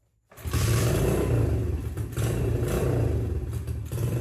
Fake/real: real